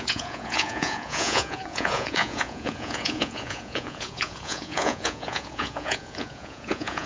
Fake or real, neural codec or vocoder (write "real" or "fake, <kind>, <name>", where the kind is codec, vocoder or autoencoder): fake, vocoder, Vocos